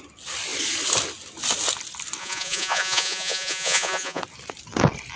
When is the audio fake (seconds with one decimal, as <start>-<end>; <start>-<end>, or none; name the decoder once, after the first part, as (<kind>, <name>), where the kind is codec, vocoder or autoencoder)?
2.2-4.2 (vocoder, Vocos)